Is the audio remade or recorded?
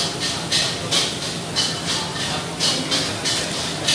recorded